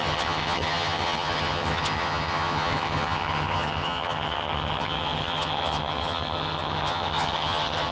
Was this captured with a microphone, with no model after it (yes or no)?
no